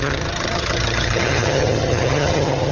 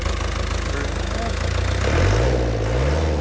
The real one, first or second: second